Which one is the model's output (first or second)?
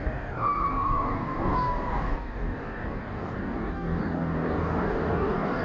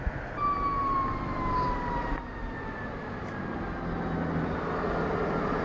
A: first